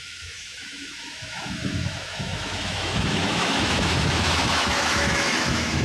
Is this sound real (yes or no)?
no